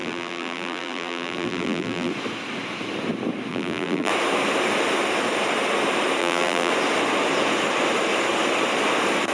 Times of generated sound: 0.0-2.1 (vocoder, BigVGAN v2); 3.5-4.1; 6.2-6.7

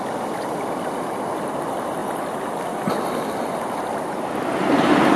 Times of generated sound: none

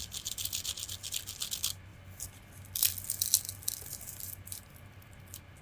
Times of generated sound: 3.9-4.7 (vocoder, BigVGAN v2)

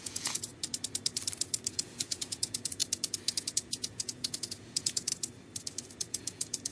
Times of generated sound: 0.0-0.5 (vocoder, Vocos); 1.7-2.8; 3.5-5.1; 5.9-6.7

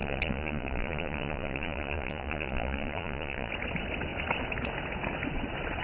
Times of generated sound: 0.0-3.5 (vocoder, Vocos)